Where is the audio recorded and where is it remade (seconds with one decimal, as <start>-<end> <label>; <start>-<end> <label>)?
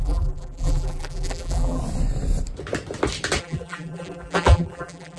0.0-1.8 remade; 1.8-3.4 recorded; 3.4-5.2 remade